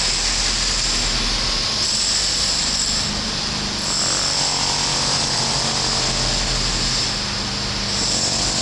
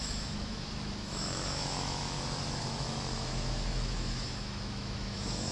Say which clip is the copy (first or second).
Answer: second